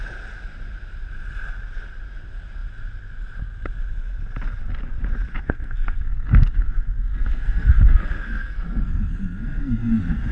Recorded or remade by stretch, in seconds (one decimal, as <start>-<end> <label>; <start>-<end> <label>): 0.0-5.3 recorded; 5.3-10.3 remade

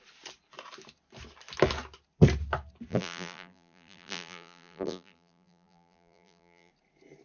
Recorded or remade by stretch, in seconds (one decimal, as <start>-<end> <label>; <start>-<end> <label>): 0.0-2.9 recorded; 2.9-6.7 remade; 6.7-7.2 recorded

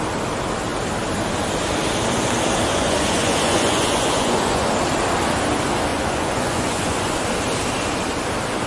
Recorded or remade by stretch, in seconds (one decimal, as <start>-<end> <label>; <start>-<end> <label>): 0.0-2.7 recorded; 2.7-4.7 remade; 4.7-5.9 recorded; 5.9-7.2 remade; 7.2-8.7 recorded

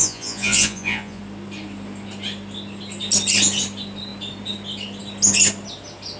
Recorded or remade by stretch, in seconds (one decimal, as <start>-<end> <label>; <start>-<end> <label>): 0.0-1.2 remade; 1.2-6.2 recorded

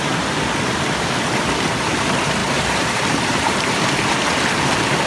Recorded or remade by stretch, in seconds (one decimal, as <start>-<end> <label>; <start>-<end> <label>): 0.0-2.4 recorded; 2.4-3.8 remade; 3.8-5.1 recorded

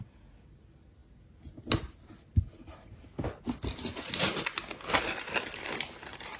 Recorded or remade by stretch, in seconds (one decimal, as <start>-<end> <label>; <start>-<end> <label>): 0.0-3.9 recorded; 3.9-4.4 remade; 4.4-6.4 recorded